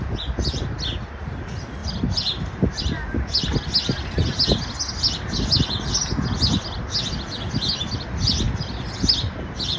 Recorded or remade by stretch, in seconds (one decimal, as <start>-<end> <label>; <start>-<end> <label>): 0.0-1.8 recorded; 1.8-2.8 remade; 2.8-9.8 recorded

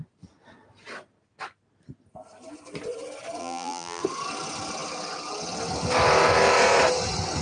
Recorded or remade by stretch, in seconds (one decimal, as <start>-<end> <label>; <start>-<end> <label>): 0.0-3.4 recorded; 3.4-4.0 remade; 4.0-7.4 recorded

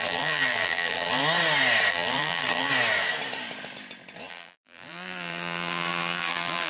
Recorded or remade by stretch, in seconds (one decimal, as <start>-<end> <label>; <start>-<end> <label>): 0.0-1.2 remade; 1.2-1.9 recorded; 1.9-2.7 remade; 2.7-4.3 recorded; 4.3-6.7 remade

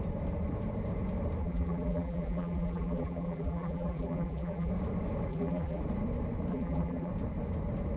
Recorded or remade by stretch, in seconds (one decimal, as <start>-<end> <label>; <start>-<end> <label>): 0.0-1.4 recorded; 1.4-4.7 remade; 4.7-5.3 recorded; 5.3-5.8 remade; 5.8-6.5 recorded; 6.5-7.1 remade; 7.1-8.0 recorded

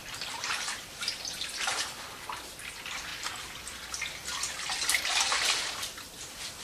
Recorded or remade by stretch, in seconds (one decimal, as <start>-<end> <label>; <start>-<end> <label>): 0.0-0.7 remade; 0.7-6.6 recorded

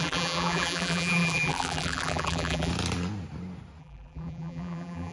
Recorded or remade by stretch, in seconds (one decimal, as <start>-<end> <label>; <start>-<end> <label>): 0.0-2.7 remade; 2.7-3.8 recorded; 3.8-5.1 remade